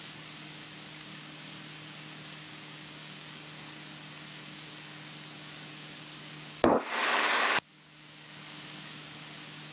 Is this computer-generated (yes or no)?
yes